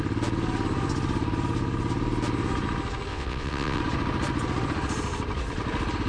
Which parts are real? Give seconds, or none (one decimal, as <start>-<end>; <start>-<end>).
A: 0.0-3.1; 3.8-6.1